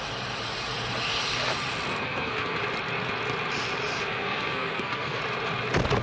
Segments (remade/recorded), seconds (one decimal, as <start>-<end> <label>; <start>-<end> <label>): 0.0-1.9 recorded; 1.9-2.6 remade; 2.6-3.9 recorded; 3.9-5.2 remade; 5.2-6.0 recorded

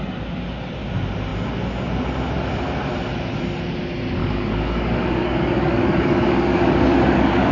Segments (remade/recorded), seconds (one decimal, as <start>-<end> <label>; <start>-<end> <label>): 0.0-4.2 recorded; 4.2-7.5 remade

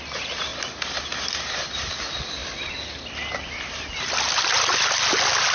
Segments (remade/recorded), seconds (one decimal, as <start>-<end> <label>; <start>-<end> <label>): 0.0-0.5 recorded; 0.5-1.9 remade; 1.9-5.5 recorded

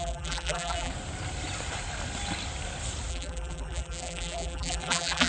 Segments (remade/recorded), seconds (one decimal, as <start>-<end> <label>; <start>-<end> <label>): 0.0-0.9 remade; 0.9-3.1 recorded; 3.1-5.3 remade

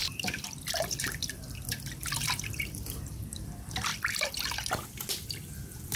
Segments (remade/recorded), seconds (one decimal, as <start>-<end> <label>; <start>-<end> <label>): 0.0-3.9 remade; 3.9-4.7 recorded; 4.7-6.0 remade

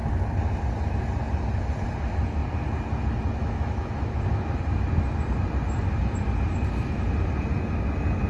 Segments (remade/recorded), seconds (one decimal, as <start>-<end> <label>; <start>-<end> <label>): 0.0-3.4 recorded; 3.4-4.4 remade; 4.4-8.3 recorded